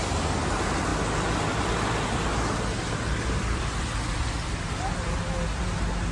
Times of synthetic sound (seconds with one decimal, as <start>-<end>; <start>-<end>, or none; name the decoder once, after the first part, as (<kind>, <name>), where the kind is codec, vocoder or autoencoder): none